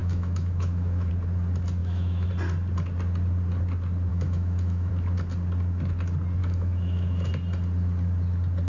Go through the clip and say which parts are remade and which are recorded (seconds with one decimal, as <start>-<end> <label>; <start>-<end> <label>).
0.0-1.1 remade; 1.1-1.8 recorded; 1.8-2.3 remade; 2.3-4.1 recorded; 4.1-4.9 remade; 4.9-6.4 recorded; 6.4-7.3 remade; 7.3-8.7 recorded